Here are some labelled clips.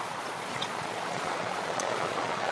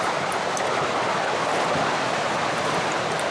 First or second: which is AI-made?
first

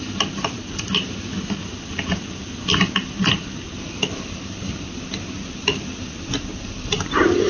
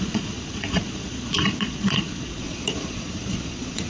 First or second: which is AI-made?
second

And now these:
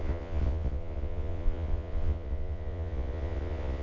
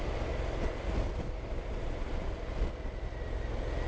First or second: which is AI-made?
first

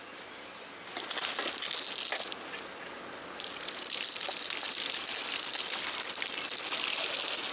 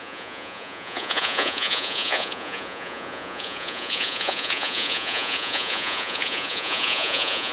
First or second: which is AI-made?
second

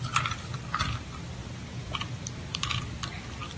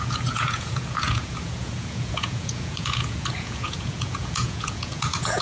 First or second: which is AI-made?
second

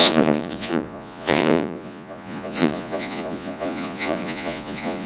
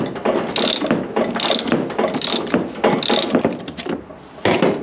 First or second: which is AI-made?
first